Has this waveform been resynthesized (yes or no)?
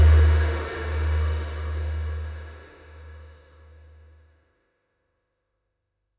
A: yes